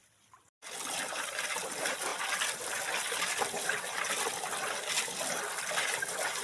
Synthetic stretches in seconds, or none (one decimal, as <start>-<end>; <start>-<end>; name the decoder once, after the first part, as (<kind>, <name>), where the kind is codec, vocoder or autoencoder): 0.0-6.4 (vocoder, BigVGAN v2)

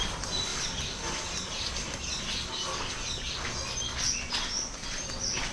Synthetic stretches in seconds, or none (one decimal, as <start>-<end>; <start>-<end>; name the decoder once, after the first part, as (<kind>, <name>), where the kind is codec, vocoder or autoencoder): none

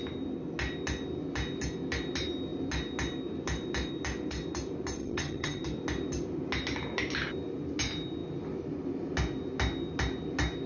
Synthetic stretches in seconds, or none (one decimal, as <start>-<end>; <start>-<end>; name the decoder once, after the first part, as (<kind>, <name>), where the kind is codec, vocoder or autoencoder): 5.0-5.6 (vocoder, HiFi-GAN)

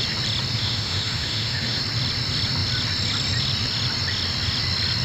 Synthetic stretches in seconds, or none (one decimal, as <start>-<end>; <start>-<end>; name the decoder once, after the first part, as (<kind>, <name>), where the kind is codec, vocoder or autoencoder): 0.6-1.8 (autoencoder, DAC-VAE)